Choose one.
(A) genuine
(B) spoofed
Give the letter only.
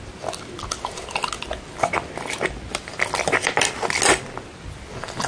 A